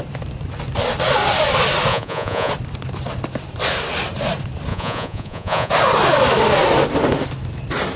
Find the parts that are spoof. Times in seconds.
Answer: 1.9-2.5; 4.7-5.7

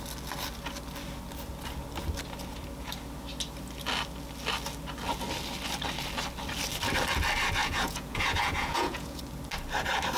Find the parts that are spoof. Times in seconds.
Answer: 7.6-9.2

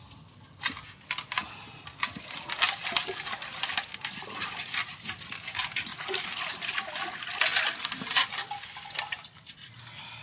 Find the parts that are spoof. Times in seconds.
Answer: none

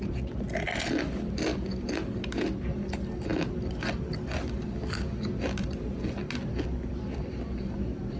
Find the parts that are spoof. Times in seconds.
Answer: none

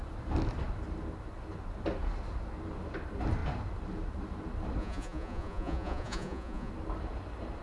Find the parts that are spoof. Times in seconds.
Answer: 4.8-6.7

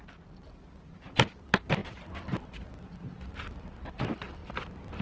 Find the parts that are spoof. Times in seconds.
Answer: none

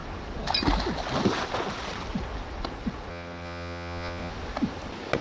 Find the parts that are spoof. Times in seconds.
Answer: 3.1-4.3